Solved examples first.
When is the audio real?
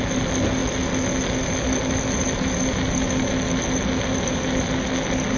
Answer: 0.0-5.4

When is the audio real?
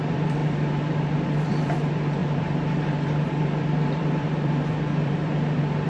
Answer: none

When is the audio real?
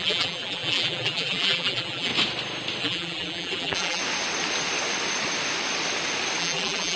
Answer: 2.1-2.8; 4.0-6.4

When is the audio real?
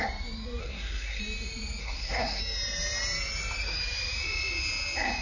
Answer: 0.0-0.6; 1.2-1.8; 2.4-5.2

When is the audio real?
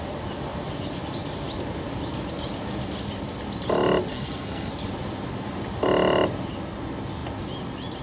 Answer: 0.0-4.1; 4.7-8.0